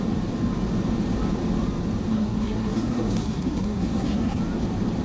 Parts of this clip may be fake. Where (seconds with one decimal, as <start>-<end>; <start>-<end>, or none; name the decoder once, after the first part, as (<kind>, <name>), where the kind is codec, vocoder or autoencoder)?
2.1-4.4 (codec, SNAC)